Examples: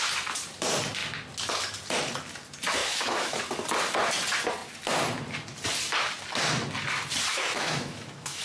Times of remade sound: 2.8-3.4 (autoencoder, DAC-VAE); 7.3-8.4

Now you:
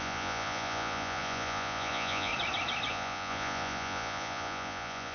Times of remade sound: 0.0-2.3 (vocoder, Vocos); 2.9-5.1